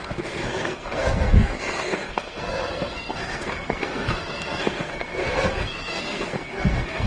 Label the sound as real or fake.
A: fake